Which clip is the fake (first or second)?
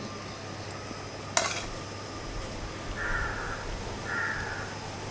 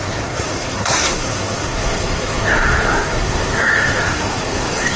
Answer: second